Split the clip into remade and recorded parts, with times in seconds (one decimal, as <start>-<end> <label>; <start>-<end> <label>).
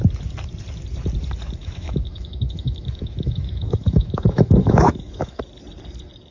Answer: 0.0-1.6 recorded; 1.6-5.4 remade; 5.4-6.3 recorded